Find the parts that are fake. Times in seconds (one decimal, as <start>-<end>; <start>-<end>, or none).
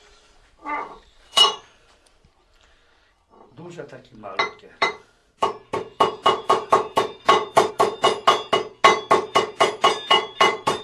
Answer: 0.0-2.8; 4.6-8.2; 9.2-10.8